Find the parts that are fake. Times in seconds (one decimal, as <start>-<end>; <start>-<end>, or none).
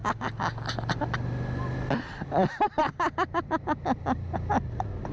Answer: none